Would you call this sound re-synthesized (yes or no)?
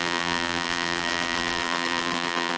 yes